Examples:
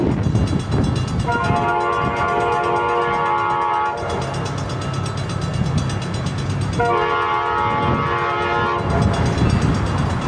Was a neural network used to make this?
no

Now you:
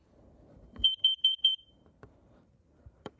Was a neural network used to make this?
yes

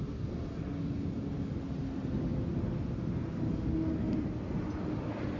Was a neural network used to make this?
no